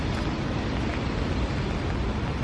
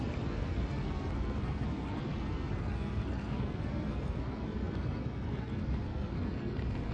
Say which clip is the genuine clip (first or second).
first